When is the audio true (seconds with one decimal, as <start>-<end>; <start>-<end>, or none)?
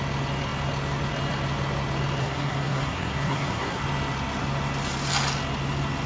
0.0-2.2; 3.8-6.1